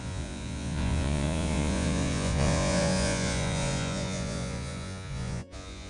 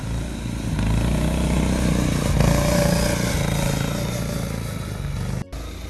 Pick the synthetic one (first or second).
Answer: first